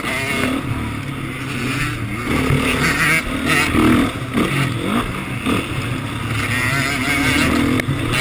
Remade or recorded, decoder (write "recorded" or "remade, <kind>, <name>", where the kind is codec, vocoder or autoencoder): recorded